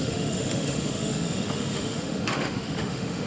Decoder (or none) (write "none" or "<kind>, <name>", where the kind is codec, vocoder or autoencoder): autoencoder, DAC-VAE